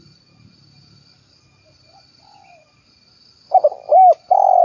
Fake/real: real